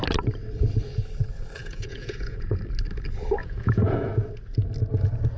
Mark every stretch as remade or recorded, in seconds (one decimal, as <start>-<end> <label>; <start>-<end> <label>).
0.0-1.6 recorded; 1.6-2.6 remade; 2.6-3.4 recorded; 3.4-4.1 remade; 4.1-5.4 recorded